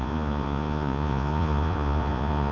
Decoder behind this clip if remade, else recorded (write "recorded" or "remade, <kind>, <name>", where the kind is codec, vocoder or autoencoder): remade, vocoder, Vocos